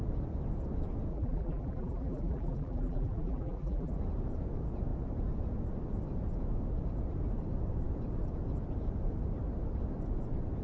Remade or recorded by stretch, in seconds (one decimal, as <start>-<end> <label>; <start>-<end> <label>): 0.0-1.1 recorded; 1.1-3.9 remade; 3.9-10.6 recorded